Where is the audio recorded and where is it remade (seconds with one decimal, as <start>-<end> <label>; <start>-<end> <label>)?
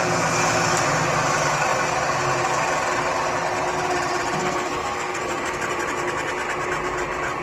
0.0-4.4 recorded; 4.4-5.6 remade; 5.6-7.4 recorded